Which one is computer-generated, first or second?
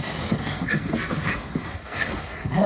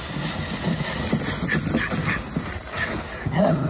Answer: first